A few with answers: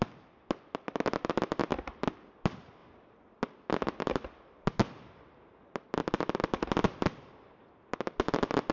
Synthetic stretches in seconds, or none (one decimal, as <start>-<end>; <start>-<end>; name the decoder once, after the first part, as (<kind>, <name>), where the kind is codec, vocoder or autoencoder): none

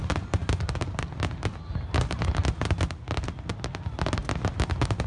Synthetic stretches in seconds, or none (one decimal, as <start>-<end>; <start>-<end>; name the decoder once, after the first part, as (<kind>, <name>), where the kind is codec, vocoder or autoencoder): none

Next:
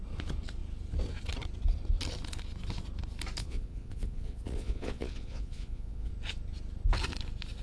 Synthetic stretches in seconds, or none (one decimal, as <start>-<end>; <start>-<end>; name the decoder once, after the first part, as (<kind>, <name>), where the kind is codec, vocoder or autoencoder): 3.4-6.1 (vocoder, Vocos)

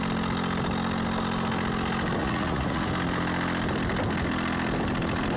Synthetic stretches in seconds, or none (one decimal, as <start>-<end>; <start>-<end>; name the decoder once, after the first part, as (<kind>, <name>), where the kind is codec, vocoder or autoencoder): 2.2-2.9 (vocoder, Vocos)

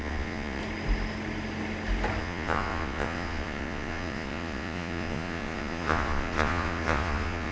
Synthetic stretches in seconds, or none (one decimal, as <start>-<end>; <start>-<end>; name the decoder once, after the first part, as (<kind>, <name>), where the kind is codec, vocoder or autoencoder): 0.0-0.6 (vocoder, Vocos); 2.2-7.5